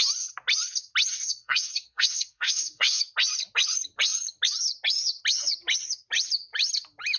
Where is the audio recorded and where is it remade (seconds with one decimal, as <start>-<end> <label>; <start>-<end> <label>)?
0.0-1.1 recorded; 1.1-3.0 remade; 3.0-7.2 recorded